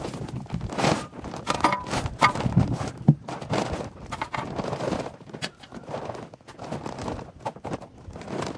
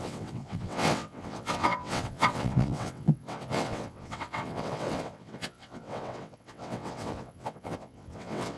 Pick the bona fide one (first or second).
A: first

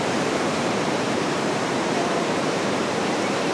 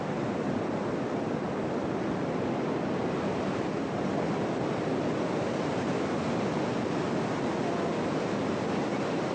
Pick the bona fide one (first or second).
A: second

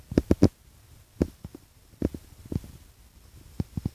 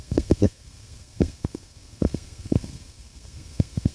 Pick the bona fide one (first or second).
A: first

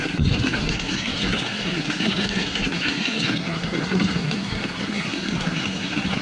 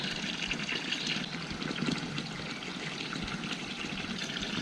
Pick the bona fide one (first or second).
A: second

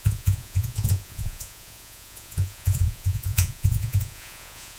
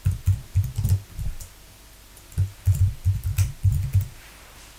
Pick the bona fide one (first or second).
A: second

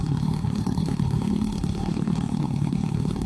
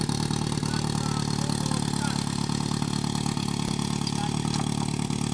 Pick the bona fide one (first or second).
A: second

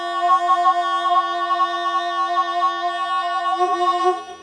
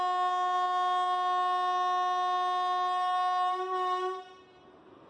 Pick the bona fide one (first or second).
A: second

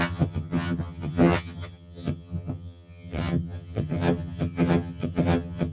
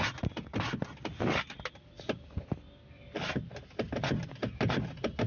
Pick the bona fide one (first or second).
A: second